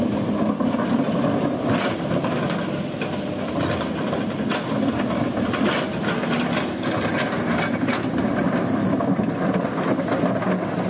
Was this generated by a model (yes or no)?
no